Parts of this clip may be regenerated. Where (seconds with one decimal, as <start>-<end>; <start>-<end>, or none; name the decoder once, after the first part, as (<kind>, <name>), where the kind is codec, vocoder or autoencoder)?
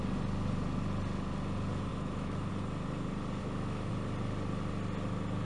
1.9-2.5 (autoencoder, DAC-VAE); 3.4-3.9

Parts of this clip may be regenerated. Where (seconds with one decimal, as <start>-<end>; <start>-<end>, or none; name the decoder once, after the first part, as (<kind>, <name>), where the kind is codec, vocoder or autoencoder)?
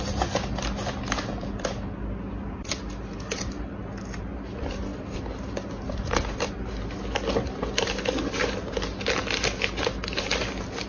none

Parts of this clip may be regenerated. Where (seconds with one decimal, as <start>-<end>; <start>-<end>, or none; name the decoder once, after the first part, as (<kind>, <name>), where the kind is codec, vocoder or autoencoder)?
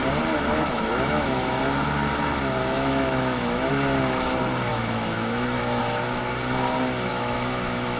0.9-1.6 (autoencoder, DAC-VAE); 2.6-3.7; 4.7-5.8; 7.1-8.0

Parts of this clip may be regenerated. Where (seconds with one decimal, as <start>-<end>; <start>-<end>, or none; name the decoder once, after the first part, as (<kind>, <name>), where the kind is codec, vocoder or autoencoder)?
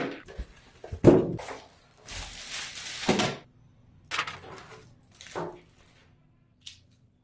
none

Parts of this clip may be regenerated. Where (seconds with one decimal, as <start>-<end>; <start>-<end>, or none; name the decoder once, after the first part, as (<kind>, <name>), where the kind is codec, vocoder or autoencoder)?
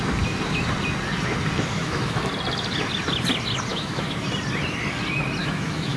1.8-2.3 (autoencoder, DAC-VAE); 3.7-4.3; 5.4-6.0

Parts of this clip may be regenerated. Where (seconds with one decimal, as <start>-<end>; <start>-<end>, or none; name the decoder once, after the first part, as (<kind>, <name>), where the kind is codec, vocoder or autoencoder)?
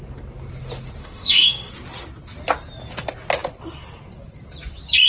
1.0-1.7 (autoencoder, DAC-VAE)